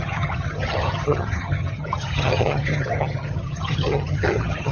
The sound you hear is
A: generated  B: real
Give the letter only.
A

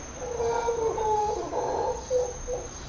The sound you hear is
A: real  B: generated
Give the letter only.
A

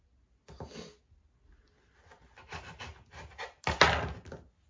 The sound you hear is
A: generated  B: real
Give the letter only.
B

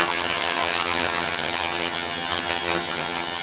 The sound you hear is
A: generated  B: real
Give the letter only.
A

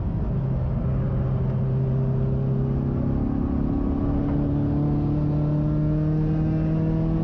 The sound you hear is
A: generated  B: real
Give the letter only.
B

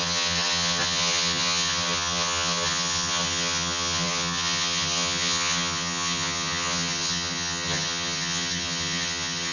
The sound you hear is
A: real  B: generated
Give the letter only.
B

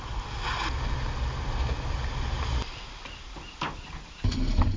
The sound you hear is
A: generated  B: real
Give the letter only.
B